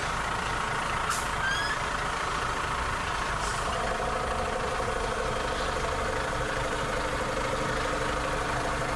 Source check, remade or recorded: remade